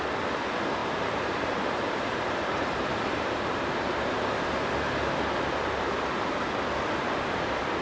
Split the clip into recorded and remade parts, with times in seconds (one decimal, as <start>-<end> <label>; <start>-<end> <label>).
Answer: 0.0-0.8 recorded; 0.8-4.3 remade; 4.3-7.8 recorded